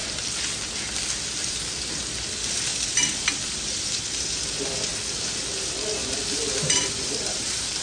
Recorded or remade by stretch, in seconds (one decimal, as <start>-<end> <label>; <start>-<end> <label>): 0.0-1.5 recorded; 1.5-6.0 remade; 6.0-6.7 recorded; 6.7-7.8 remade